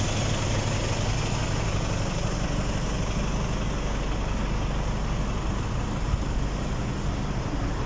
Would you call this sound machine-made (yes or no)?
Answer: no